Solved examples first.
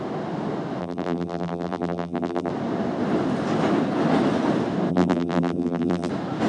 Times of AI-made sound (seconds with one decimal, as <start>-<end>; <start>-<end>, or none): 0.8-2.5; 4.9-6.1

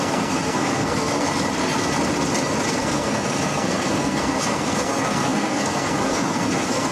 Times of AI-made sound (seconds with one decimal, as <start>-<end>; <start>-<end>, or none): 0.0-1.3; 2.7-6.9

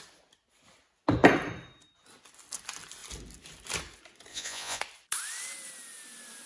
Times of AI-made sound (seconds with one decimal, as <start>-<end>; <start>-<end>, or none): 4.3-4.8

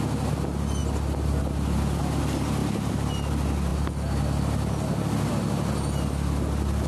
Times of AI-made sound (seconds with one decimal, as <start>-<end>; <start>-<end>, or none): none